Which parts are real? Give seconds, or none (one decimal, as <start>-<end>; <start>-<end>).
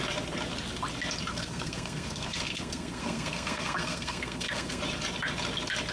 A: 0.0-1.3; 4.8-5.9